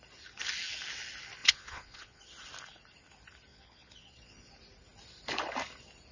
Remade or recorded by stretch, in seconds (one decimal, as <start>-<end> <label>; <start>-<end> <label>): 0.0-1.4 recorded; 1.4-2.2 remade; 2.2-3.5 recorded; 3.5-4.5 remade; 4.5-6.1 recorded